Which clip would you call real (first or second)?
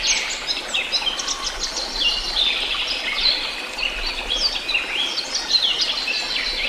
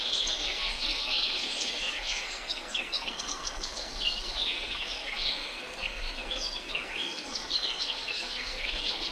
first